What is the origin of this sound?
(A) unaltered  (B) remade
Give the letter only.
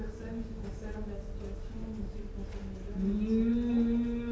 A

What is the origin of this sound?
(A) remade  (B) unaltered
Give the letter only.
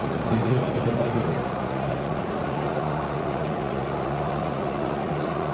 A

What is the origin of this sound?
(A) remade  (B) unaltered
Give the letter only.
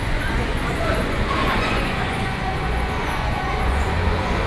A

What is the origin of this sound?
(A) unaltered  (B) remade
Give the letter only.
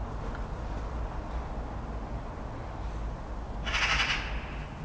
A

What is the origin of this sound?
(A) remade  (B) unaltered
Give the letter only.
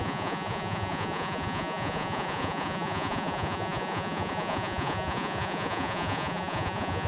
A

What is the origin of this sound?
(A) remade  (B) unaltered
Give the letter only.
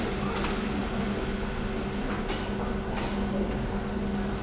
B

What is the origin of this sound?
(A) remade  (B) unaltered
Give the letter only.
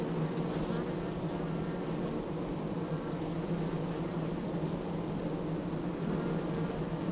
B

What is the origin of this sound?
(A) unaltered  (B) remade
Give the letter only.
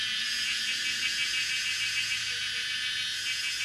B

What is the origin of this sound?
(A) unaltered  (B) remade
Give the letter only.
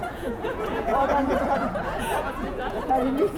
B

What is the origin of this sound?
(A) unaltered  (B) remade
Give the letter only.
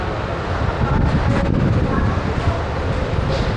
A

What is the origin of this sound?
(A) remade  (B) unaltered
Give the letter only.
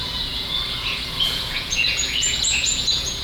A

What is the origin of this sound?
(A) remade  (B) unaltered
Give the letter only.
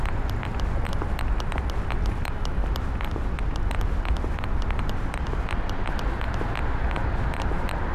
B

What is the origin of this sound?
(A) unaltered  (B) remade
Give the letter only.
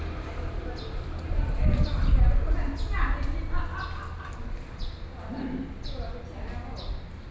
A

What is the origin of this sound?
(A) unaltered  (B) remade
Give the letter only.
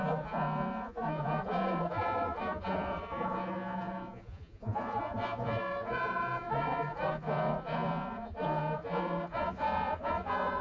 B